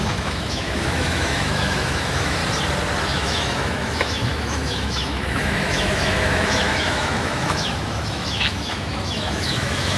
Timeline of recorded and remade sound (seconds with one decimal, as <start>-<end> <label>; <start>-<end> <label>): 0.0-2.4 remade; 2.4-3.0 recorded; 3.0-10.0 remade